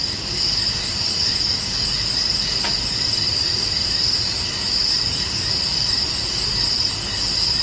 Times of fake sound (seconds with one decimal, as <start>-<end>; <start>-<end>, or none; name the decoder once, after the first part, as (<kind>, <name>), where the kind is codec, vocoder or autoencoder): 4.8-6.3 (vocoder, BigVGAN v2)